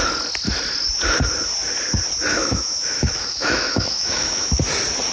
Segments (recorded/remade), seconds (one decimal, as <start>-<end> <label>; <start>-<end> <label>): 0.0-2.3 recorded; 2.3-4.5 remade; 4.5-5.1 recorded